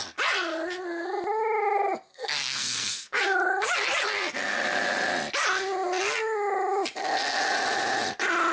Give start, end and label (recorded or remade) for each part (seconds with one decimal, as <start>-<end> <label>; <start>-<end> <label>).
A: 0.0-2.1 recorded; 2.1-3.2 remade; 3.2-8.5 recorded